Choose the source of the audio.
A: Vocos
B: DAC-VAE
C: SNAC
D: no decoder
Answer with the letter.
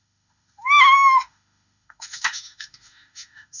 B